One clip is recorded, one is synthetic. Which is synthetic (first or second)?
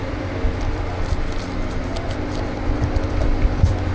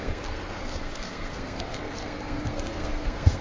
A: second